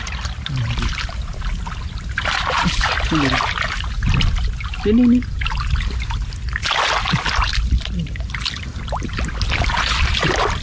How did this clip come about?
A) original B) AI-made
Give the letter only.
A